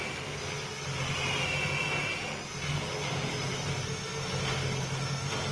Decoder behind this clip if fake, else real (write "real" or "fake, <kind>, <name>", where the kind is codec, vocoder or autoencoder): real